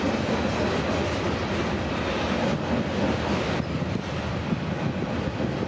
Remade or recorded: recorded